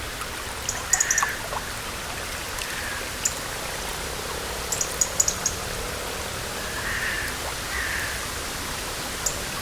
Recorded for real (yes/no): yes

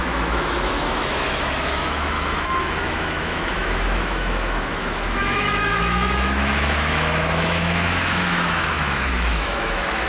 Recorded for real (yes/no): no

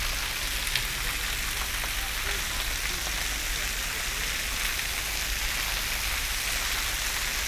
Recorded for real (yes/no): yes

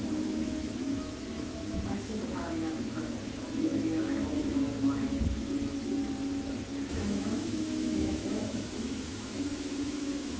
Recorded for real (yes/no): no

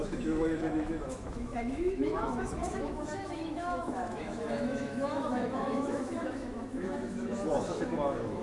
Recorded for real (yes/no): no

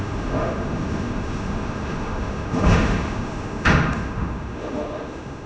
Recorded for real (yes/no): no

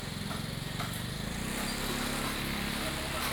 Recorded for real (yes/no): yes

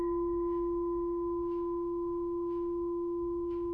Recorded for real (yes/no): no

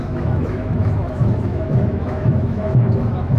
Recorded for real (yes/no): no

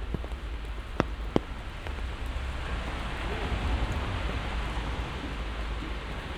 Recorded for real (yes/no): yes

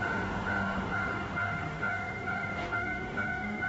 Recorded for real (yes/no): no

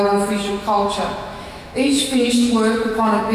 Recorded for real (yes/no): no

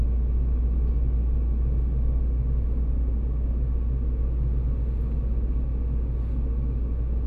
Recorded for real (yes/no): yes